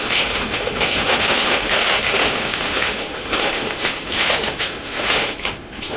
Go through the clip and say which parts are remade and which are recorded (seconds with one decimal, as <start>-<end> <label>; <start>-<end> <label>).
0.0-6.0 remade